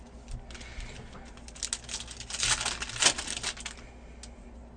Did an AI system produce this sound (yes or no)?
no